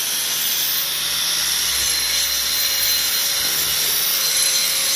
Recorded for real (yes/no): yes